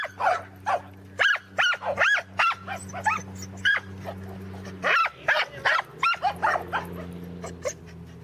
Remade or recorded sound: recorded